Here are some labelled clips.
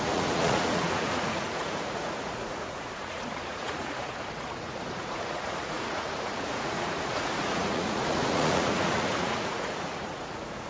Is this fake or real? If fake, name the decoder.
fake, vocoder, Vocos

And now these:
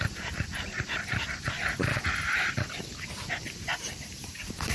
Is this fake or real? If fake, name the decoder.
real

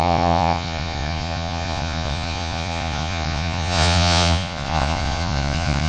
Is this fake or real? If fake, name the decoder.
fake, vocoder, Vocos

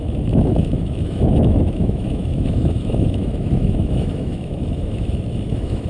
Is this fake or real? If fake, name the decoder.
fake, autoencoder, DAC-VAE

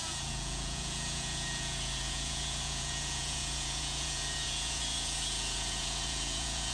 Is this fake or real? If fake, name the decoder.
fake, vocoder, Vocos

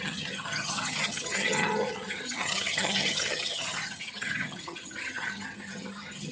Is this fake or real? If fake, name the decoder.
fake, vocoder, HiFi-GAN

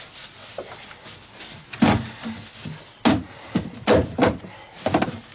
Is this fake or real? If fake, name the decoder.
real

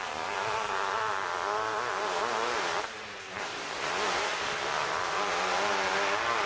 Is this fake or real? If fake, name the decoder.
fake, vocoder, BigVGAN v2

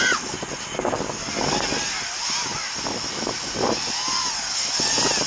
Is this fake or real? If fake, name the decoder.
real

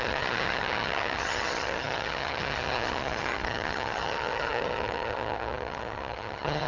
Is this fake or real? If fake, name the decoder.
fake, vocoder, HiFi-GAN